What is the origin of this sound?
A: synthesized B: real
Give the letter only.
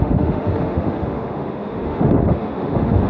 A